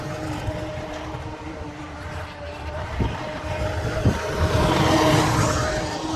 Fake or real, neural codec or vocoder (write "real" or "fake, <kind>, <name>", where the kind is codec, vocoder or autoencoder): real